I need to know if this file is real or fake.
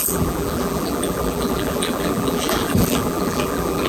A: fake